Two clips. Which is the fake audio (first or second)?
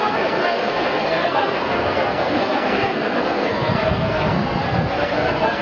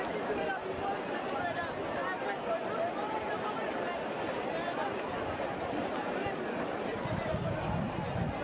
first